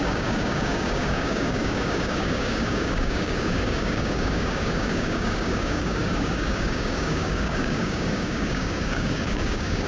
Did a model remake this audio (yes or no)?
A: yes